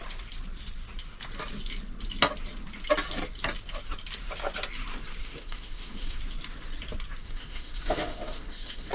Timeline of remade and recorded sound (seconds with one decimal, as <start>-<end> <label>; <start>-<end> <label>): 0.0-5.2 recorded; 5.2-6.2 remade; 6.2-7.2 recorded; 7.2-8.9 remade